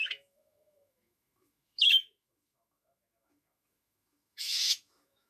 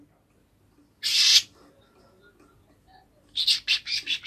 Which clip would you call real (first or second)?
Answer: second